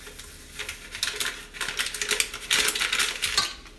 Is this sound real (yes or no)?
yes